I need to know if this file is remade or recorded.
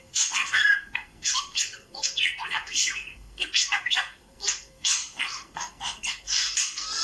remade